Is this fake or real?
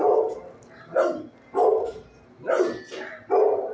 real